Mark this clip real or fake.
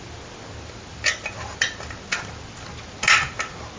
real